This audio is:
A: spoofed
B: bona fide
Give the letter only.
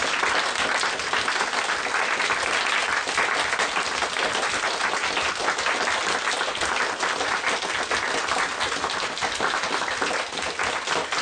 B